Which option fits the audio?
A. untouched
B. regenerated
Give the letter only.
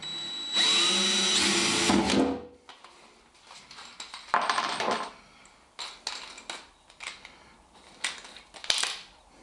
A